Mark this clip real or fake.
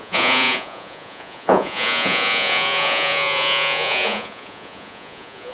fake